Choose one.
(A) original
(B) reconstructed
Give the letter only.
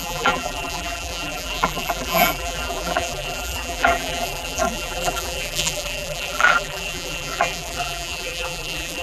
B